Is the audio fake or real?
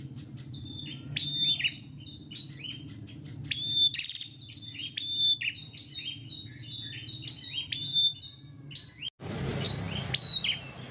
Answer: real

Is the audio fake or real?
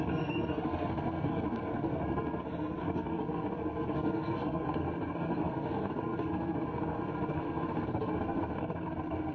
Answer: fake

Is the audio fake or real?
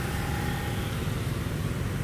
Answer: real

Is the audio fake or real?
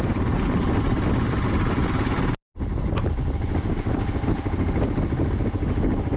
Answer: real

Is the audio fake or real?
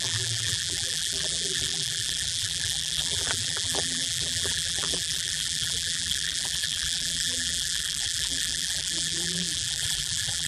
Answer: fake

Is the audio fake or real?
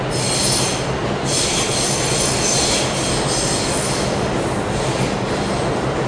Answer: real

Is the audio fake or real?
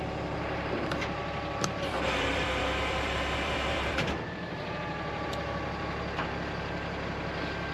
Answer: fake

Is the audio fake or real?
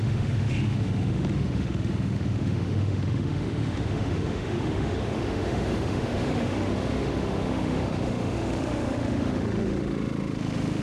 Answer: fake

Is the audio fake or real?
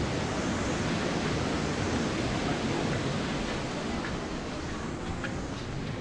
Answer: real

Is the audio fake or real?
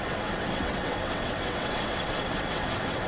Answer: fake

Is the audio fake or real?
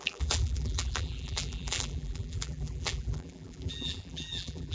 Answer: fake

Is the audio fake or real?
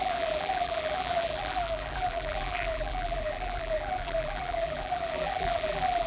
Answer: fake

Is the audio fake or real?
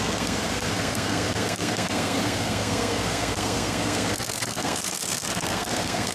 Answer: fake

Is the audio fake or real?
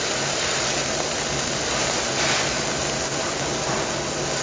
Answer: real